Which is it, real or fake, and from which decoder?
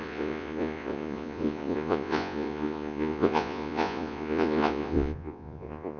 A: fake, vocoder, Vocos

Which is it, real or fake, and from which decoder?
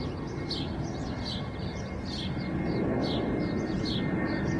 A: real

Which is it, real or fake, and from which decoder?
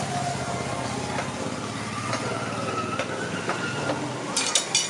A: real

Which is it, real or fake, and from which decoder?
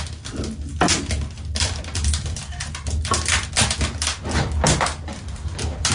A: real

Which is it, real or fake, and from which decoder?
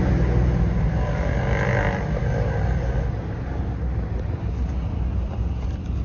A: real